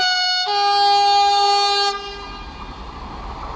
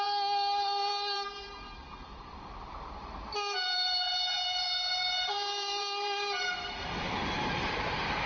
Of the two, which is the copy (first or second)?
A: second